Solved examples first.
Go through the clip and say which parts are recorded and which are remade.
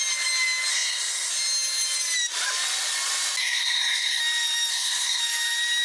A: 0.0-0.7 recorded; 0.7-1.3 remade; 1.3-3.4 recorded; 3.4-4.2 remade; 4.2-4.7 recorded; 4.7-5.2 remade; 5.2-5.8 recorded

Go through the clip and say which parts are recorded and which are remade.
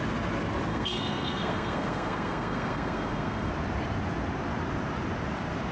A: 0.0-0.7 recorded; 0.7-3.5 remade; 3.5-5.7 recorded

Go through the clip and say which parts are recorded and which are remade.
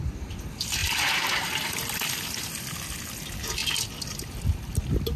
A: 0.0-5.2 recorded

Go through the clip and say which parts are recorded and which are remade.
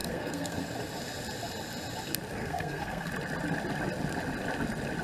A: 0.0-0.6 remade; 0.6-2.4 recorded; 2.4-3.1 remade; 3.1-5.0 recorded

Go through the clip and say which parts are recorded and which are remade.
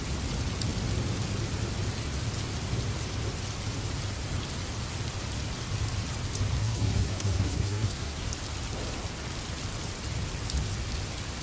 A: 0.0-6.6 recorded; 6.6-8.3 remade; 8.3-11.4 recorded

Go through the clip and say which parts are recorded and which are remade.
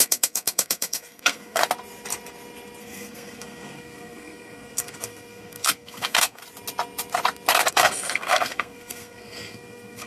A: 0.0-1.6 remade; 1.6-2.8 recorded; 2.8-6.4 remade; 6.4-7.7 recorded; 7.7-10.1 remade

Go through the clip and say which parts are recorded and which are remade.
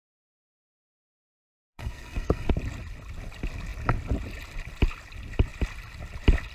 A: 0.0-0.4 recorded; 0.4-2.5 remade; 2.5-6.5 recorded